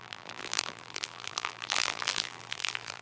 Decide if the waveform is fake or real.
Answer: fake